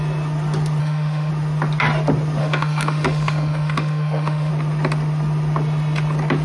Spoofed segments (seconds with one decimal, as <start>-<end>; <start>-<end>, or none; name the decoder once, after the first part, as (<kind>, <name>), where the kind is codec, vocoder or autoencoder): 0.8-1.3 (autoencoder, DAC-VAE); 2.4-4.5